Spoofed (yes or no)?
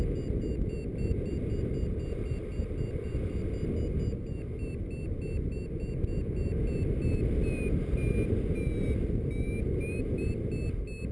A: no